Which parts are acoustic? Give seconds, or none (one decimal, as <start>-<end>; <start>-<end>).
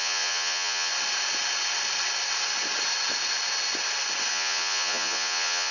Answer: 0.9-4.3